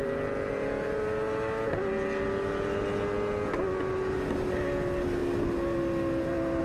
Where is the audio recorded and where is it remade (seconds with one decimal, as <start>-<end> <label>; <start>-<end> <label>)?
0.0-6.6 recorded